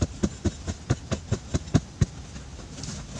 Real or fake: real